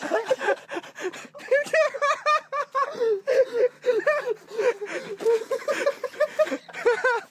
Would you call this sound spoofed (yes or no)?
no